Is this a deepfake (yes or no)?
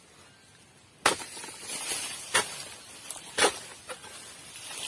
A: no